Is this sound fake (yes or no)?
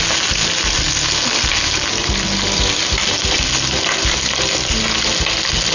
no